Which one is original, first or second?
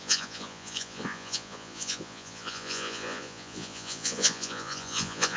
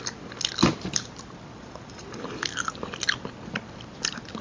second